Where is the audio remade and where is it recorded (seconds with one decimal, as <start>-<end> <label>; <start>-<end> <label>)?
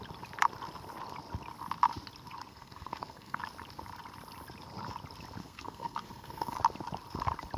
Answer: 0.0-2.5 recorded; 2.5-3.4 remade; 3.4-5.4 recorded; 5.4-6.6 remade; 6.6-7.6 recorded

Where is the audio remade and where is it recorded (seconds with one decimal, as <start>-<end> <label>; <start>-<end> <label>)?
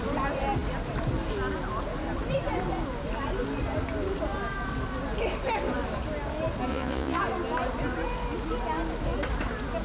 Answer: 0.0-6.7 recorded; 6.7-7.2 remade; 7.2-9.8 recorded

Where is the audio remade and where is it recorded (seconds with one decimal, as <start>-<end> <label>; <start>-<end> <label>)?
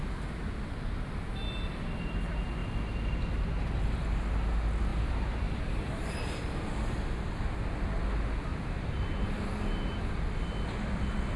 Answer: 0.0-4.9 recorded; 4.9-7.3 remade; 7.3-8.5 recorded; 8.5-10.2 remade; 10.2-11.4 recorded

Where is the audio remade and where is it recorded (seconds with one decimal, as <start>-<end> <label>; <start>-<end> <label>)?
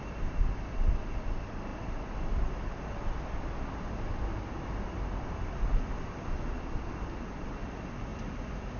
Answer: 0.0-8.8 recorded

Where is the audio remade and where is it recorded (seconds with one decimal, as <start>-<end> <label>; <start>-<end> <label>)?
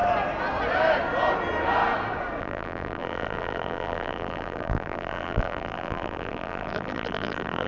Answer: 0.0-2.4 recorded; 2.4-7.7 remade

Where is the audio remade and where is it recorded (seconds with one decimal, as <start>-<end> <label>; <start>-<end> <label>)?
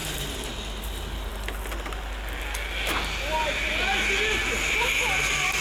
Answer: 0.0-0.5 remade; 0.5-5.6 recorded